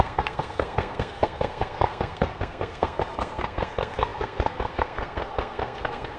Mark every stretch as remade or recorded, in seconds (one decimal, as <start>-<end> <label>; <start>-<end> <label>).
0.0-6.2 remade